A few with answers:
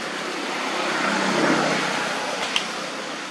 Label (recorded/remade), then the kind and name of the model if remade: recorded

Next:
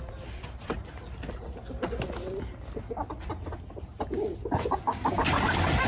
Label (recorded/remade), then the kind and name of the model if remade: recorded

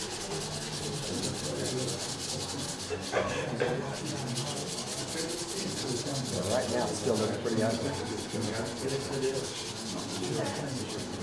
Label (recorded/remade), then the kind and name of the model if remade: recorded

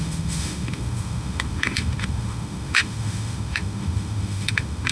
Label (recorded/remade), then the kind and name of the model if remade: remade, autoencoder, DAC-VAE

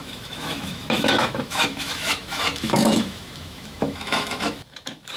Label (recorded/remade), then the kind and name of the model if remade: remade, autoencoder, DAC-VAE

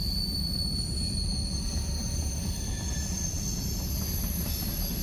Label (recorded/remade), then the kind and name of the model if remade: recorded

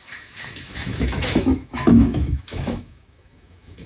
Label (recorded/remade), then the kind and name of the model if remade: remade, autoencoder, DAC-VAE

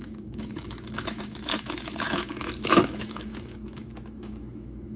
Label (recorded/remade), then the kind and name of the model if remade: remade, autoencoder, DAC-VAE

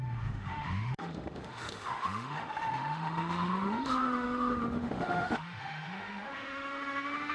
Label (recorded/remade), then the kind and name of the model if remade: remade, autoencoder, DAC-VAE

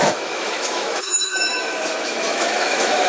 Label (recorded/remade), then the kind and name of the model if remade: remade, autoencoder, DAC-VAE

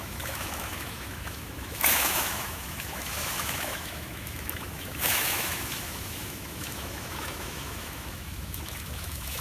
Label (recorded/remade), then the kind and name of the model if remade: remade, autoencoder, DAC-VAE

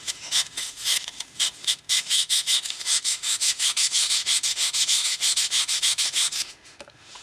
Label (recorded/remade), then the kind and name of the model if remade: remade, autoencoder, DAC-VAE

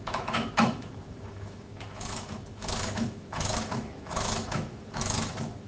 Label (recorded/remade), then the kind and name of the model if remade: remade, autoencoder, DAC-VAE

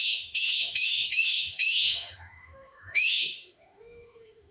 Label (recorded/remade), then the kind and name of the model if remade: remade, autoencoder, DAC-VAE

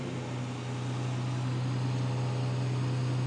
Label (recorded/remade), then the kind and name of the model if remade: recorded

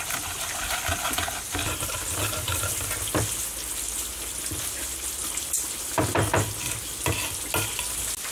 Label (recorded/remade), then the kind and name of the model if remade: recorded